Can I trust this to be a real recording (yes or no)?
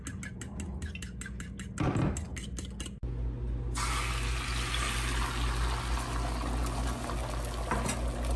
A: yes